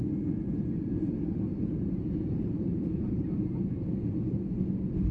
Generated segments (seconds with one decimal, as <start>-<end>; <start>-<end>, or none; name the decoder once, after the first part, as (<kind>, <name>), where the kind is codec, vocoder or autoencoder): 1.5-4.6 (vocoder, BigVGAN v2)